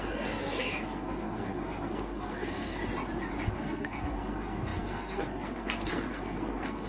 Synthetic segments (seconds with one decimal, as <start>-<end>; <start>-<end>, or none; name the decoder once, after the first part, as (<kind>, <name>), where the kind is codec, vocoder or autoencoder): 0.0-2.8 (codec, SNAC); 3.5-6.9